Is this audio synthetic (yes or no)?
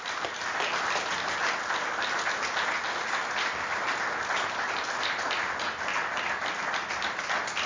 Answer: no